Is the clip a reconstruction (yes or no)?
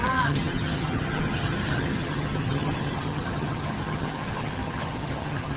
yes